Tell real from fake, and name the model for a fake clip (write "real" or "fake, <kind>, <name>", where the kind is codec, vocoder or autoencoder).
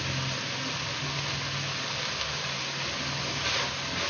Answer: real